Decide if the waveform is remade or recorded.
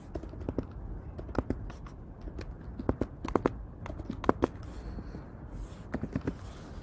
recorded